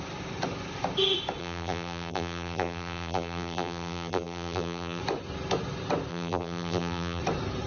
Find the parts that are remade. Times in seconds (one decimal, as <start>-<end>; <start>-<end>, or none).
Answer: 1.4-5.0; 6.1-7.2